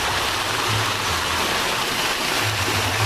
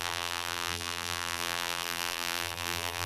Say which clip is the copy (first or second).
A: second